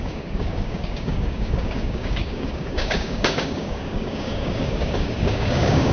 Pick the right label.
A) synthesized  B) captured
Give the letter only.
A